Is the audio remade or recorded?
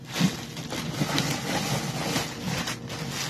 recorded